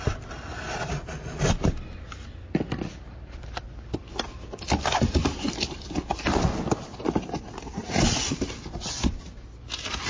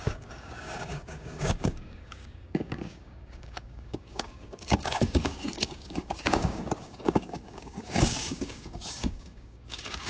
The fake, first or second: second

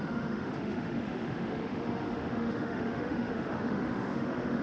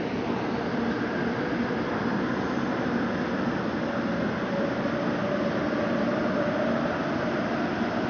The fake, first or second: first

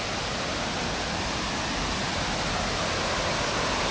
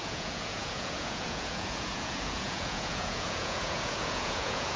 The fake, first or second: second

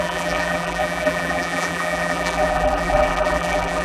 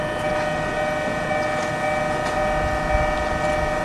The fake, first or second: first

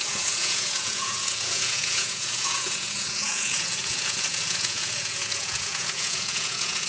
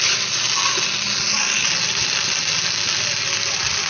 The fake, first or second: first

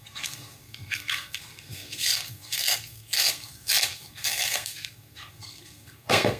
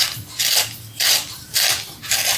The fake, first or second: first